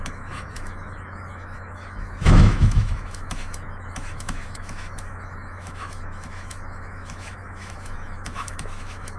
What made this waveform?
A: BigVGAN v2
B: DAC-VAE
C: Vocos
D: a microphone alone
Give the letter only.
B